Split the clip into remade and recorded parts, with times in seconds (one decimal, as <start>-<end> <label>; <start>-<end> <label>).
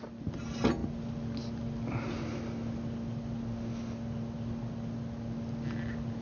0.0-6.2 recorded